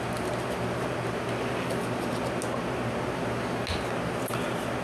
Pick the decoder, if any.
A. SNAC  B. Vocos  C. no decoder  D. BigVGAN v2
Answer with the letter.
C